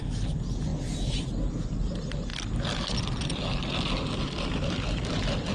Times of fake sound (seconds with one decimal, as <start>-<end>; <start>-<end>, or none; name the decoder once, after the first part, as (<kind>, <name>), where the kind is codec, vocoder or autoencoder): none